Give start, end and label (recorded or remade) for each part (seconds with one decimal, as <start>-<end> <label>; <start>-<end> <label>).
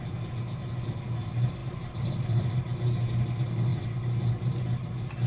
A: 0.0-1.6 recorded; 1.6-2.6 remade; 2.6-5.3 recorded